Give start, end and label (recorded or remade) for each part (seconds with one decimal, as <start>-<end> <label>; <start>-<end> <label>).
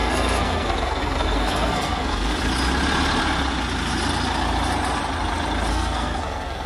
0.0-2.3 remade; 2.3-5.7 recorded; 5.7-6.7 remade